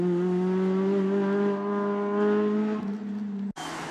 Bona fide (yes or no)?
yes